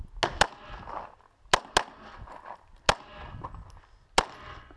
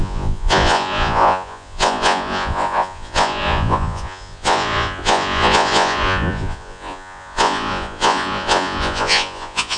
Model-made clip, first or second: second